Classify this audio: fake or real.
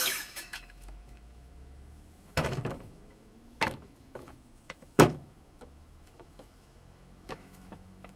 fake